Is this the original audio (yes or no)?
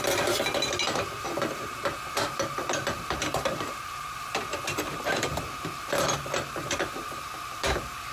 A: no